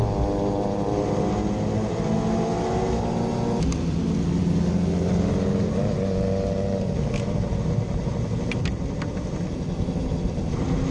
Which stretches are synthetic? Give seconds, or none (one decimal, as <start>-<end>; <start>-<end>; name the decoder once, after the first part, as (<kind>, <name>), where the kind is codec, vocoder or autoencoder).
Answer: none

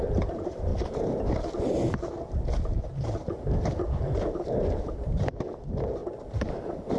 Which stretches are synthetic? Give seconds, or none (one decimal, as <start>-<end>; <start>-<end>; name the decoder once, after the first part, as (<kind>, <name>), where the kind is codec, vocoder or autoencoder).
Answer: 0.0-0.7 (vocoder, BigVGAN v2); 4.9-6.0

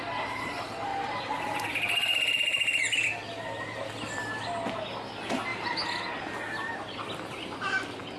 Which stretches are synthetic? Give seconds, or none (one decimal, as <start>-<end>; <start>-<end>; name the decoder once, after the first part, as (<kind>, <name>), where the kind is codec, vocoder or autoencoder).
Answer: none

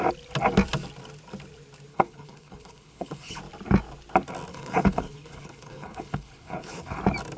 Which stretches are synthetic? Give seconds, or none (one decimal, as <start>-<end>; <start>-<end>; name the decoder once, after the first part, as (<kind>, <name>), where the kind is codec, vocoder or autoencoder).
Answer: 1.9-3.4 (codec, HILCodec); 4.5-7.0

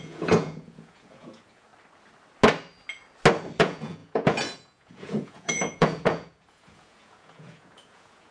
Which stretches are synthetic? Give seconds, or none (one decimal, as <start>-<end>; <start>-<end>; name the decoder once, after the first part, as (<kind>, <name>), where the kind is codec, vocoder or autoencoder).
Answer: 0.0-1.7 (vocoder, Vocos); 3.6-8.3

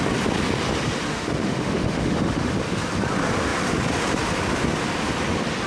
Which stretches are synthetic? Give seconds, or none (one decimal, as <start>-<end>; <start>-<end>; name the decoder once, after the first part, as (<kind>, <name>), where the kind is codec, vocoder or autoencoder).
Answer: 1.1-2.5 (autoencoder, DAC-VAE)